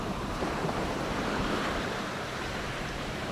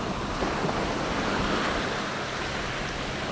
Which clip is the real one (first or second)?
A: second